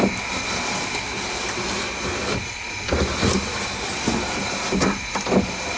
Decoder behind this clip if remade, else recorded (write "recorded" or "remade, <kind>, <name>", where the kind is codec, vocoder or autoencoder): recorded